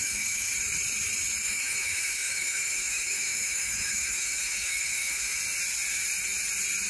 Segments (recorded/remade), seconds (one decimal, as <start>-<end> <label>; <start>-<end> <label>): 0.0-0.5 remade; 0.5-1.4 recorded; 1.4-5.4 remade; 5.4-6.9 recorded